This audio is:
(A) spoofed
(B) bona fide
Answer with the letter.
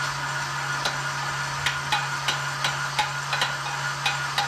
B